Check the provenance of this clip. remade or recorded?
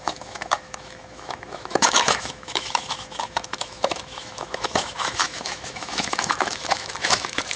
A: remade